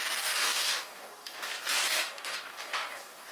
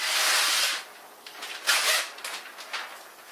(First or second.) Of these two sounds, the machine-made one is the first